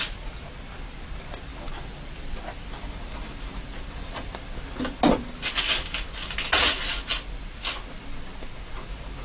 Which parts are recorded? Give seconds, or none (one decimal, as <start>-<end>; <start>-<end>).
0.0-1.5; 4.3-7.1; 7.7-9.2